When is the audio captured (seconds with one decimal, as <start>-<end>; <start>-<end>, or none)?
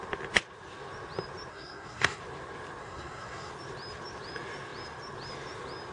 0.0-1.5; 2.2-2.8; 3.5-5.9